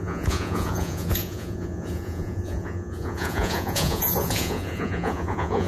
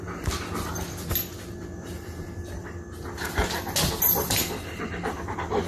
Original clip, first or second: second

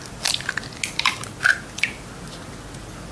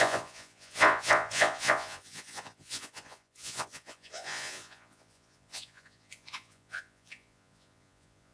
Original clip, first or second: first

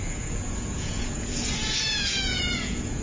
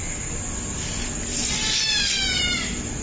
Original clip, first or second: second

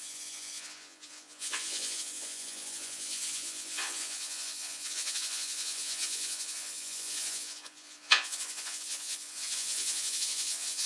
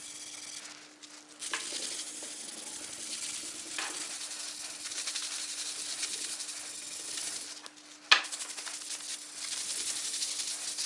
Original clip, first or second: second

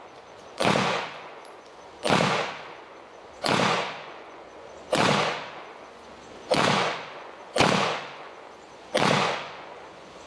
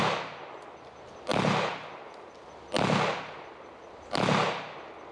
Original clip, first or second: second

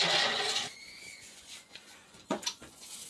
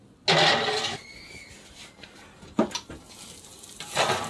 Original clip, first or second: second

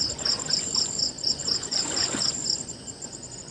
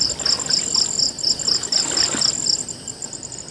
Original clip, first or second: second